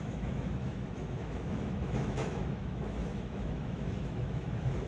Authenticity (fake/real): fake